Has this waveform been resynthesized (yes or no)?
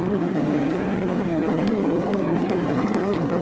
yes